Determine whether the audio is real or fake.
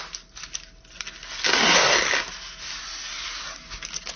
real